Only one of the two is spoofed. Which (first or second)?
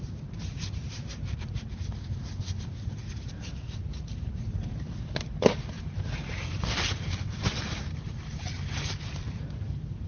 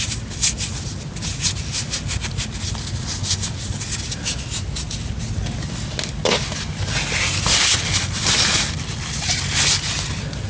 first